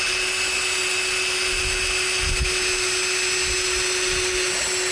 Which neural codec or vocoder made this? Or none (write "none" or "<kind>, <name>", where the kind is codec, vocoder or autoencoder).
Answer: none